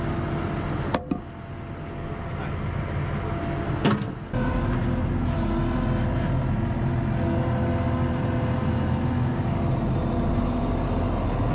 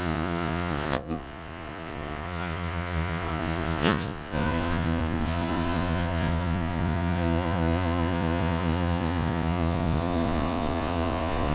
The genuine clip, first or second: first